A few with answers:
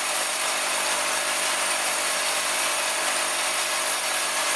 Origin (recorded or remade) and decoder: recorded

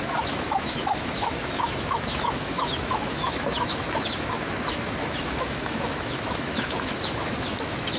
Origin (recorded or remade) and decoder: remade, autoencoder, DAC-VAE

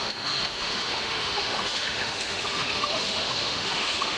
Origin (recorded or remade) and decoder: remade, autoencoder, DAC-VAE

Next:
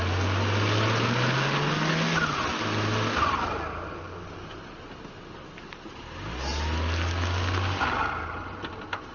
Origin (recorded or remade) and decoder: recorded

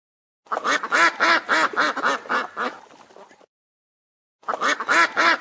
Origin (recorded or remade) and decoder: recorded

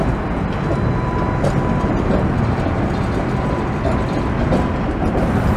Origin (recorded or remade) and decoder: recorded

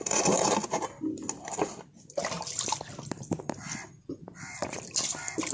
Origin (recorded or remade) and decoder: recorded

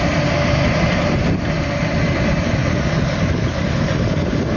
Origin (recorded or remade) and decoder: recorded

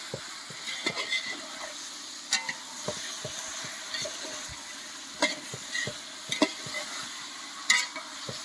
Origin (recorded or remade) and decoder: recorded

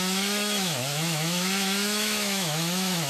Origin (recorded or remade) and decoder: remade, autoencoder, DAC-VAE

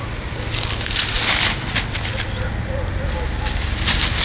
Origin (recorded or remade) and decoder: recorded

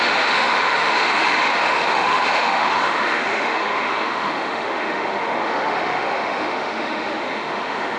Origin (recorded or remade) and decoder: remade, autoencoder, DAC-VAE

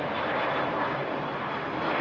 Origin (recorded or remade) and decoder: recorded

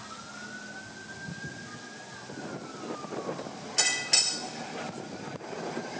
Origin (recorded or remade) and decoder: recorded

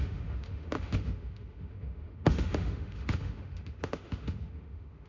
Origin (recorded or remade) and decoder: remade, autoencoder, DAC-VAE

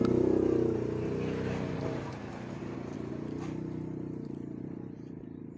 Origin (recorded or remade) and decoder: recorded